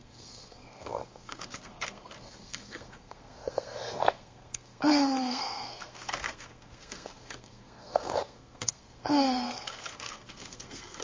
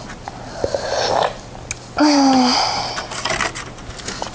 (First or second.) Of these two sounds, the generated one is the first